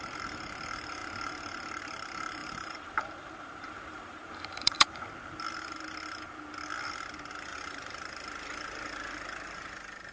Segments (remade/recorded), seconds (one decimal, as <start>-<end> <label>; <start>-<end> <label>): 0.0-2.4 recorded; 2.4-5.0 remade; 5.0-7.5 recorded; 7.5-8.0 remade; 8.0-10.1 recorded